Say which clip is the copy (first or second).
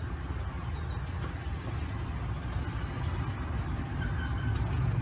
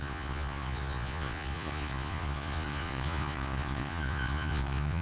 second